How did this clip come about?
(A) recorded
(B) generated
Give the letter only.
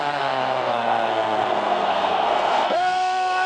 B